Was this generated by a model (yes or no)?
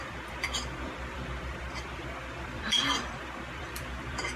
yes